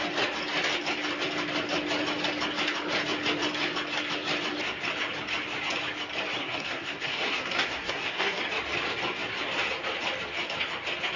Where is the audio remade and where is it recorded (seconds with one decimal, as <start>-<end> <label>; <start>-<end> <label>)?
0.0-6.4 recorded; 6.4-8.4 remade; 8.4-11.2 recorded